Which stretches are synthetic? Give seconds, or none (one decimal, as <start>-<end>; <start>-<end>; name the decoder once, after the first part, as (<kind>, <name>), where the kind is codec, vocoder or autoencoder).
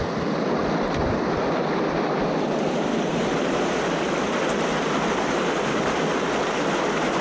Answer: 0.6-1.4 (vocoder, BigVGAN v2); 2.9-6.2